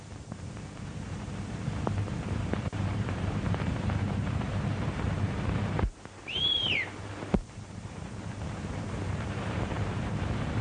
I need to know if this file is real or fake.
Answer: fake